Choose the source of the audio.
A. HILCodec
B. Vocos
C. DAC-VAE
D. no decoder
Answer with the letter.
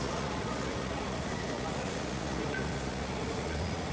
B